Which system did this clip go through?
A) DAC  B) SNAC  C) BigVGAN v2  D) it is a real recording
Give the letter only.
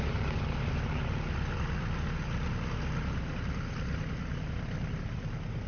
D